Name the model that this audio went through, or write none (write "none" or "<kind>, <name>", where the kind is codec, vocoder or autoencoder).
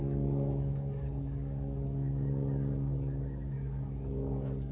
codec, DAC